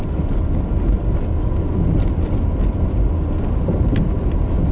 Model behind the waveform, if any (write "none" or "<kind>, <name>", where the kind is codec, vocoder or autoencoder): none